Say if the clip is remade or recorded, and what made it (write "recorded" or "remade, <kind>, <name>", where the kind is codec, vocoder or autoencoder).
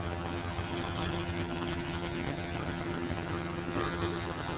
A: remade, vocoder, HiFi-GAN